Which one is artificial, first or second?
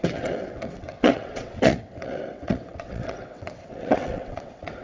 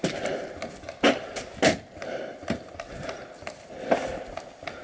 first